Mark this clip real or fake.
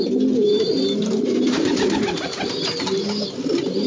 real